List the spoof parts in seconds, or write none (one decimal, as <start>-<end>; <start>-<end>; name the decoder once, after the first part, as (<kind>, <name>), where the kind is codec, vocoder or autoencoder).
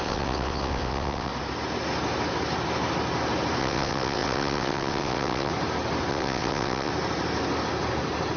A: 0.0-1.3 (vocoder, WaveNeXt); 3.6-5.5; 6.1-6.9